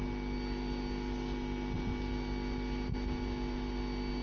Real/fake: real